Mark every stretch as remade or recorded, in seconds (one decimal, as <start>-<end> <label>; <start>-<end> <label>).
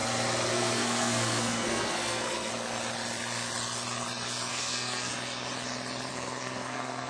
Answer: 0.0-0.5 recorded; 0.5-2.5 remade; 2.5-4.5 recorded; 4.5-5.1 remade; 5.1-6.1 recorded; 6.1-7.1 remade